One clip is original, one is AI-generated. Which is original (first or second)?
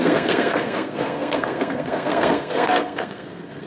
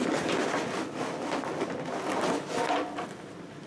second